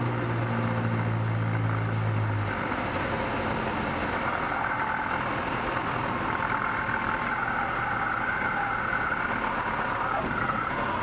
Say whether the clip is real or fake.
real